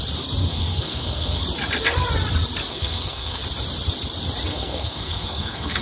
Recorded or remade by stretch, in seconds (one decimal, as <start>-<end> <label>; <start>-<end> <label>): 0.0-0.4 recorded; 0.4-1.4 remade; 1.4-2.7 recorded; 2.7-3.4 remade; 3.4-4.5 recorded; 4.5-5.8 remade

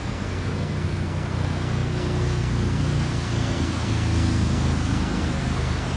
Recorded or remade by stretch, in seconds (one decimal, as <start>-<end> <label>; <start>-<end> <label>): 0.0-6.0 remade

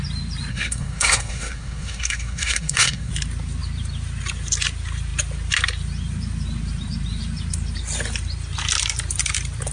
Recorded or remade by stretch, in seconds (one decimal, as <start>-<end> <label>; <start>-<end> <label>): 0.0-0.5 recorded; 0.5-3.1 remade; 3.1-9.7 recorded

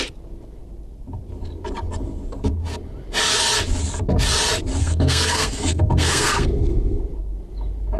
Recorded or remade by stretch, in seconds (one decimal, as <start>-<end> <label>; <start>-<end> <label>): 0.0-4.8 recorded; 4.8-7.0 remade; 7.0-8.0 recorded

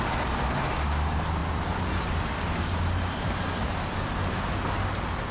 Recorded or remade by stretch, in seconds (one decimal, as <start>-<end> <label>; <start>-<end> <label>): 0.0-5.3 recorded

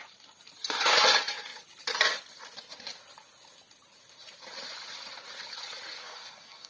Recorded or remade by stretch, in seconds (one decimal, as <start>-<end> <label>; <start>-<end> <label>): 0.0-6.0 recorded; 6.0-6.7 remade

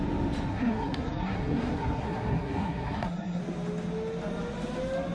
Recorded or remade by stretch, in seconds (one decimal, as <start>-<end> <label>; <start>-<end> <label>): 0.0-0.5 recorded; 0.5-3.4 remade; 3.4-5.1 recorded

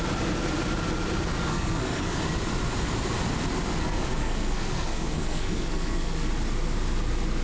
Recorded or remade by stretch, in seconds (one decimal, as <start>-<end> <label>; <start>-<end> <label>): 0.0-1.5 recorded; 1.5-2.2 remade; 2.2-3.8 recorded; 3.8-6.3 remade; 6.3-7.4 recorded